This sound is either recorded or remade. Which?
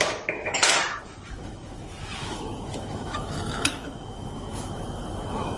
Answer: remade